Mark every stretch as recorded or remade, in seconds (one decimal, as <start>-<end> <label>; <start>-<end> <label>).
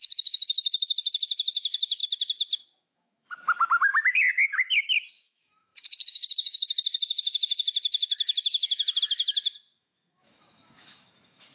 0.0-3.9 remade; 3.9-5.1 recorded; 5.1-11.5 remade